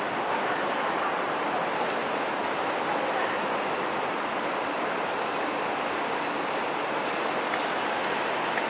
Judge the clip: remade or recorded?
recorded